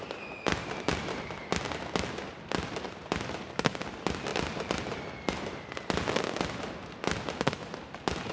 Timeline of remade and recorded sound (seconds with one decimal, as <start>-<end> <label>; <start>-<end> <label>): 0.0-4.3 recorded; 4.3-5.3 remade; 5.3-8.3 recorded